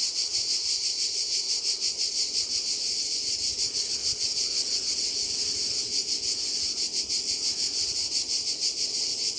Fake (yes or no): no